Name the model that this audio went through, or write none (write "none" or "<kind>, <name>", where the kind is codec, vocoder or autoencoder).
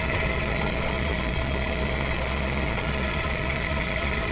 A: vocoder, Vocos